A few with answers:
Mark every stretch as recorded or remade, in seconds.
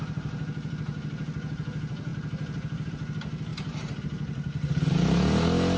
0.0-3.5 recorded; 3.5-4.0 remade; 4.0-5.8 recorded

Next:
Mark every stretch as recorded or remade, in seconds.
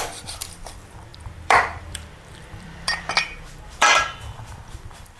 0.0-5.2 remade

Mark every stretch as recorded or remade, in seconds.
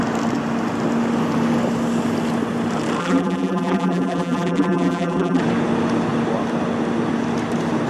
0.0-3.0 recorded; 3.0-5.4 remade; 5.4-7.9 recorded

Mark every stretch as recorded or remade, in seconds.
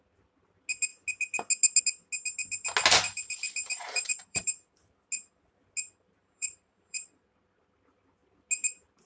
0.0-3.6 recorded; 3.6-4.4 remade; 4.4-6.2 recorded; 6.2-7.2 remade; 7.2-9.1 recorded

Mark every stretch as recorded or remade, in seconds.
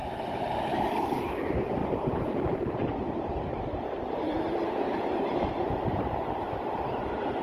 0.0-1.8 recorded; 1.8-6.2 remade; 6.2-7.4 recorded